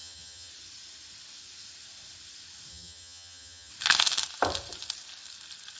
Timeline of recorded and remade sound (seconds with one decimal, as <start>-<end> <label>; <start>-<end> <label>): 0.0-0.5 remade; 0.5-2.7 recorded; 2.7-3.7 remade; 3.7-5.8 recorded